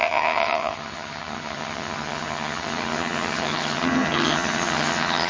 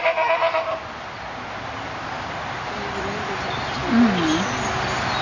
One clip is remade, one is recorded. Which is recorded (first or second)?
second